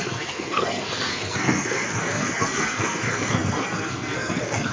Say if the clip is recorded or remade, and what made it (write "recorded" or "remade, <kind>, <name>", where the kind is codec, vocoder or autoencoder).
remade, codec, SNAC